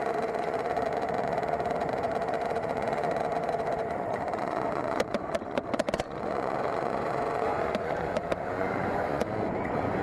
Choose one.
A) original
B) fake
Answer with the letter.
B